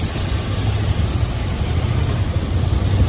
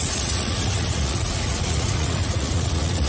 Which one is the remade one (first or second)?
second